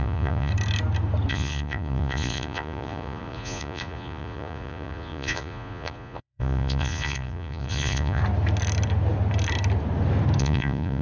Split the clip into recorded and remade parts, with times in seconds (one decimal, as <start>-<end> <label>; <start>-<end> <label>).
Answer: 0.0-0.5 remade; 0.5-1.3 recorded; 1.3-8.2 remade; 8.2-10.4 recorded; 10.4-11.0 remade